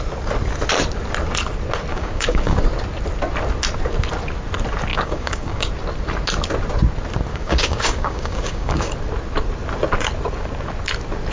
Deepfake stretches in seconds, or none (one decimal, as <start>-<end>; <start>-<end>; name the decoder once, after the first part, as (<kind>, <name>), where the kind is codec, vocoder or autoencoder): 1.9-2.6 (codec, DAC); 4.9-5.7; 7.3-8.9